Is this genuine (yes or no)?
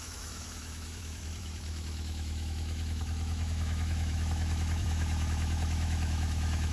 no